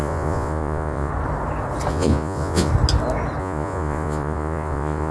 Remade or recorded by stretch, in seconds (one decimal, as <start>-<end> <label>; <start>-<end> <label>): 0.0-1.1 remade; 1.1-1.9 recorded; 1.9-2.7 remade; 2.7-3.4 recorded; 3.4-5.1 remade